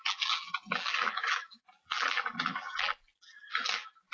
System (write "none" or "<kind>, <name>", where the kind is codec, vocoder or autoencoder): vocoder, BigVGAN v2